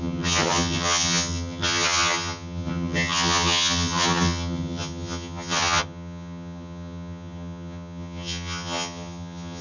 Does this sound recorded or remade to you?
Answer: remade